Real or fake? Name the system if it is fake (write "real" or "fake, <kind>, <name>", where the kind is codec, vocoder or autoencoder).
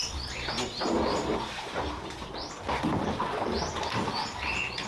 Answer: real